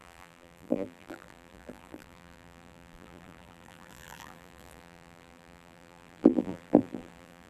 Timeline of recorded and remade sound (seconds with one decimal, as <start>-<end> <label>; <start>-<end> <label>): 0.0-7.5 remade